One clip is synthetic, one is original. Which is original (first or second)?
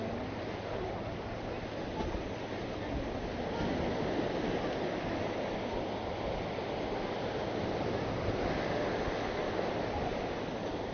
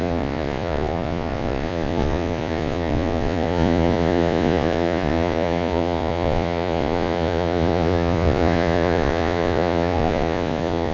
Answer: first